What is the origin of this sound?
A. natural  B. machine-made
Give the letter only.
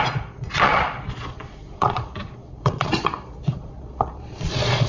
B